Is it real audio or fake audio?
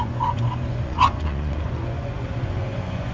fake